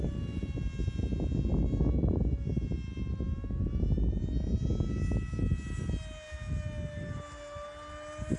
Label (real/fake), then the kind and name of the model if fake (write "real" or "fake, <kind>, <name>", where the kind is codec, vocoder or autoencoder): real